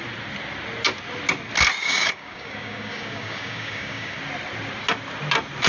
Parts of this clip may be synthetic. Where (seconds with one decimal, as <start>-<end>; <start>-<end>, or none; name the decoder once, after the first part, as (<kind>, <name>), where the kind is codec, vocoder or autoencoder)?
1.8-4.2 (codec, DAC)